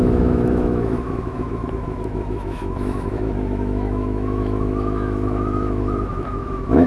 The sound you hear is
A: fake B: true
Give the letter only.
A